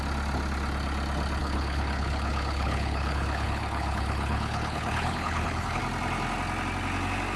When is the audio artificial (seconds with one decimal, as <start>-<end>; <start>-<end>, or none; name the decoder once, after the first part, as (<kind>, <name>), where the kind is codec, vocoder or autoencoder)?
1.4-5.8 (codec, HILCodec)